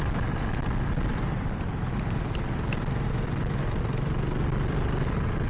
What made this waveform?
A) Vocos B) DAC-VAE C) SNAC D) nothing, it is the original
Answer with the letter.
D